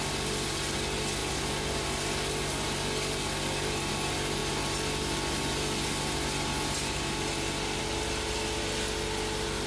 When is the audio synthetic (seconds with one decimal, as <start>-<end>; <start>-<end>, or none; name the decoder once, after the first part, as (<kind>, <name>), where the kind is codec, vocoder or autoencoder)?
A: none